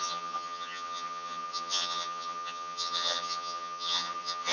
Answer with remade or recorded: remade